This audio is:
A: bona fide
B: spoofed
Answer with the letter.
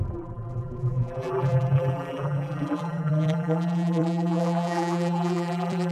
B